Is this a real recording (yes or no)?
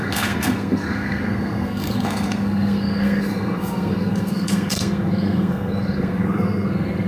no